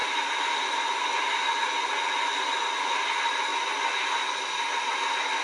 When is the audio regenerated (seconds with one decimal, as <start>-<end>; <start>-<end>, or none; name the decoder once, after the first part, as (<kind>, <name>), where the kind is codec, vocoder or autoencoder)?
0.0-0.8 (vocoder, BigVGAN v2)